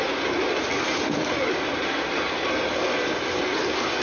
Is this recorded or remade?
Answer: recorded